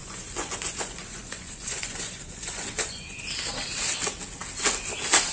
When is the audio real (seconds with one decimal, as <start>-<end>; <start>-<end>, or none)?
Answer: 3.2-5.3